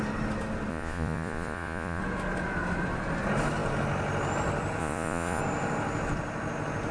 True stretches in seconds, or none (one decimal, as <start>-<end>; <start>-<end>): 0.0-0.7; 2.0-4.8; 5.4-6.9